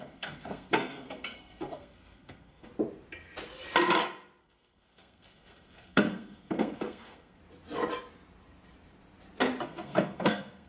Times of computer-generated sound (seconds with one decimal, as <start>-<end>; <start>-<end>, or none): 0.0-2.7; 4.4-7.4; 9.6-10.7